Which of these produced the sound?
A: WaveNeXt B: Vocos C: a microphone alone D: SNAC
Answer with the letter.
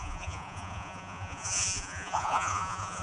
B